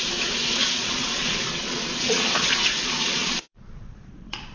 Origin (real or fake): fake